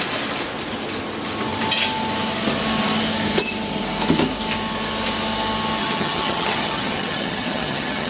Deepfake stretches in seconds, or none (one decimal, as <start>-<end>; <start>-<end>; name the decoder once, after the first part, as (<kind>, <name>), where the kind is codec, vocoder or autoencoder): 5.8-8.1 (vocoder, HiFi-GAN)

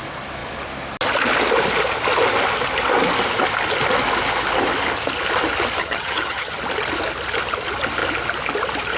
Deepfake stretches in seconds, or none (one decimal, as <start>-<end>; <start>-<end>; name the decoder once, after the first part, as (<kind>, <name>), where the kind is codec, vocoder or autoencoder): 5.8-6.6 (vocoder, HiFi-GAN)

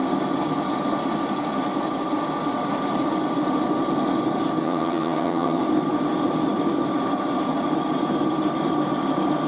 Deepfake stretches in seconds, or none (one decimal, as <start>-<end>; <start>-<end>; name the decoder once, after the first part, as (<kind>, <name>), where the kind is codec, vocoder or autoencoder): 4.6-5.6 (vocoder, HiFi-GAN)

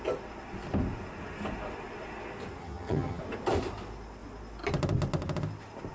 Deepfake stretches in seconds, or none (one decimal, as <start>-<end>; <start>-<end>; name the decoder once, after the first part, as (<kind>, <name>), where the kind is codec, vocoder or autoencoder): 2.6-3.2 (vocoder, HiFi-GAN)

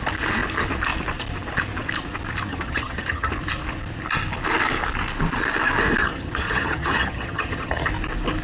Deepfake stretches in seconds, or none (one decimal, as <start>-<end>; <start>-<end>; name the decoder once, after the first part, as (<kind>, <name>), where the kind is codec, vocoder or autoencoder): 2.5-3.3 (vocoder, HiFi-GAN); 6.0-7.9

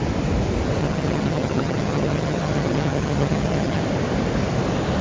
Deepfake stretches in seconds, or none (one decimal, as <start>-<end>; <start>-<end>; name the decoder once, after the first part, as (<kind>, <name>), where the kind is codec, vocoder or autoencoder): 0.8-3.8 (vocoder, HiFi-GAN)

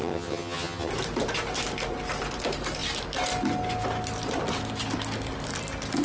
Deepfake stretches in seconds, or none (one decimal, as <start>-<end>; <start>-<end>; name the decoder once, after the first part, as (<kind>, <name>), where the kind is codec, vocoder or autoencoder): 0.0-0.9 (vocoder, HiFi-GAN)